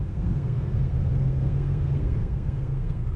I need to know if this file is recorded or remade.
remade